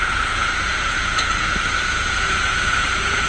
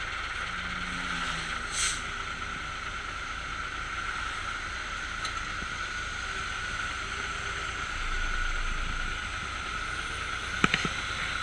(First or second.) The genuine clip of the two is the second